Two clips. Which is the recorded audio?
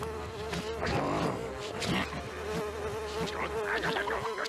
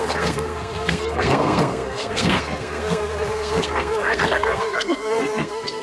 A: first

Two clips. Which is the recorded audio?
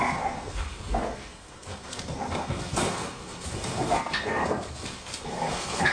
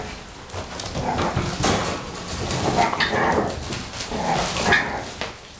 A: second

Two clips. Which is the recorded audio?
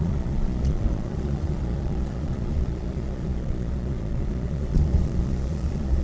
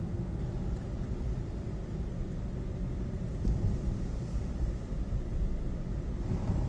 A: second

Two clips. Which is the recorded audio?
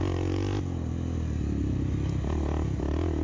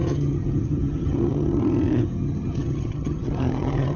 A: first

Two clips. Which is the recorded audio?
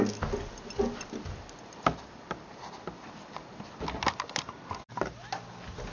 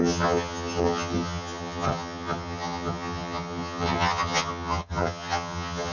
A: first